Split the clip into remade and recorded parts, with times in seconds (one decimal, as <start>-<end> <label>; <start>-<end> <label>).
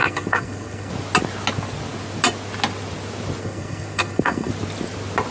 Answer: 0.0-0.9 remade; 0.9-3.4 recorded; 3.4-4.5 remade; 4.5-5.3 recorded